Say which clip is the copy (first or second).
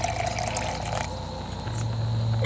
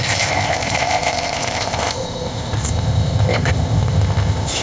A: second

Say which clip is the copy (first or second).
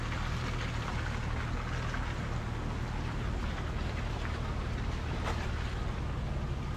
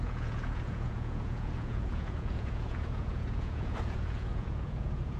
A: second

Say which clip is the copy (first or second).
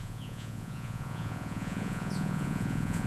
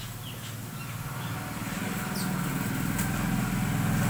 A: first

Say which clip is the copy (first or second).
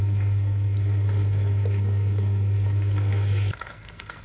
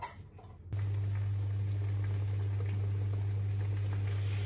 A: first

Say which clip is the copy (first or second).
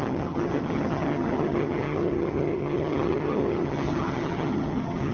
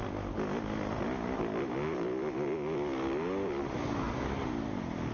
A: first